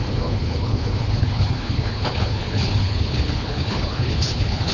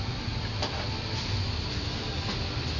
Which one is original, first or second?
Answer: second